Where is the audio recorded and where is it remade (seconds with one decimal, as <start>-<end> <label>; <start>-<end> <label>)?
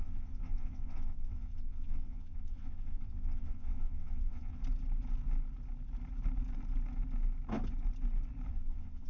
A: 0.0-4.6 remade; 4.6-8.5 recorded; 8.5-9.1 remade